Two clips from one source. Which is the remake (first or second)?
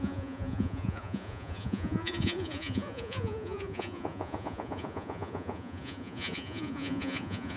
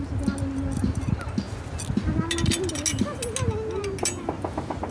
first